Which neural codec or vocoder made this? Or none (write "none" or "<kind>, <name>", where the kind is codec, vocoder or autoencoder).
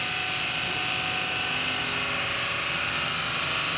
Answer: none